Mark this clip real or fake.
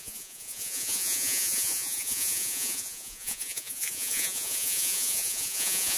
fake